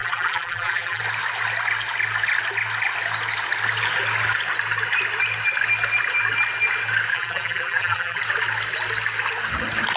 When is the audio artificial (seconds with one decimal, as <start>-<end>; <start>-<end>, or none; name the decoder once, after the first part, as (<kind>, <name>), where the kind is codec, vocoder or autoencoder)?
0.0-1.0 (vocoder, BigVGAN v2); 7.1-8.2